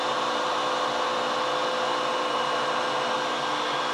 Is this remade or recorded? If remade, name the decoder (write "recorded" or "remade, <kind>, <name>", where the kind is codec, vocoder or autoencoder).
recorded